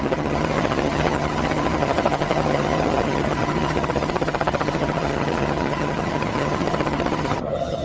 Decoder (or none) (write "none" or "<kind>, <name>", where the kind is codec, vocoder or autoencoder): vocoder, HiFi-GAN